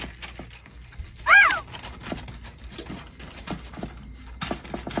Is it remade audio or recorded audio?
recorded